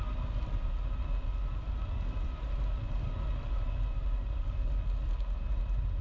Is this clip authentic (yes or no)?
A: yes